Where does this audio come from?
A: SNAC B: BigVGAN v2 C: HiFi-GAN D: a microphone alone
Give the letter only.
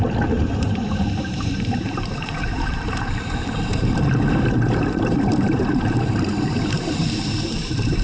B